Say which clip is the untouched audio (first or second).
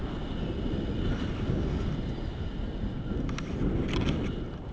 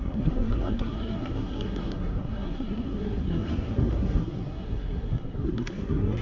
first